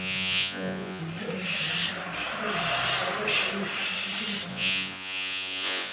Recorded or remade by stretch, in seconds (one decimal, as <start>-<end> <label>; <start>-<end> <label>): 0.0-1.0 remade; 1.0-4.5 recorded; 4.5-5.9 remade